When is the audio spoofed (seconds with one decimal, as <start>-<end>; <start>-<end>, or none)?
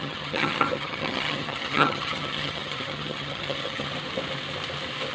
0.0-3.9